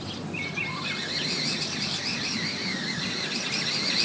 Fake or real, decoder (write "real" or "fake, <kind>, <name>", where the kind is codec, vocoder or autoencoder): real